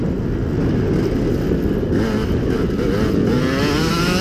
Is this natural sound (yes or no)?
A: yes